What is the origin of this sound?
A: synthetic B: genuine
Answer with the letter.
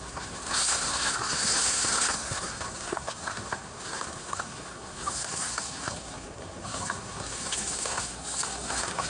A